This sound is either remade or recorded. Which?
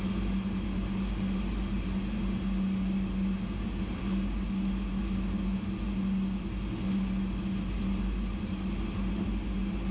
recorded